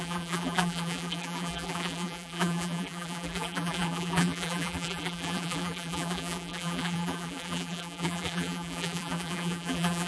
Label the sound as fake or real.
fake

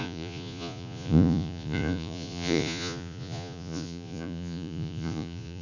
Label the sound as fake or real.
fake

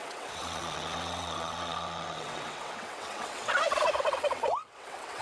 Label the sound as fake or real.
fake